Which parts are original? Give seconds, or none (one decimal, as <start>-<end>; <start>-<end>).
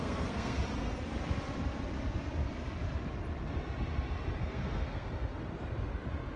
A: 0.6-4.4; 5.1-6.4